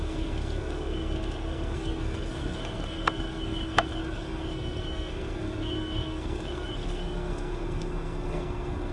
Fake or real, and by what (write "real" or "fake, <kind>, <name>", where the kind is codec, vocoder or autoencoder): fake, codec, SNAC